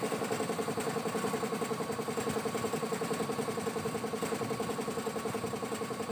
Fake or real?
real